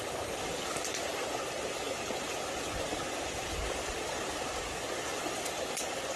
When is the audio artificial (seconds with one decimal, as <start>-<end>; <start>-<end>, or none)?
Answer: none